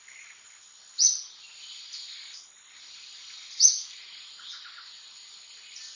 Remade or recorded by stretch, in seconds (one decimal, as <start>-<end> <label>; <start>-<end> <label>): 0.0-6.0 recorded